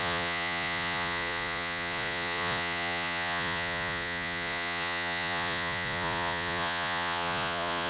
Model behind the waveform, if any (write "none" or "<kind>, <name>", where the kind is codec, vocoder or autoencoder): vocoder, Vocos